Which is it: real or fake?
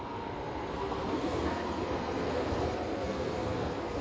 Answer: fake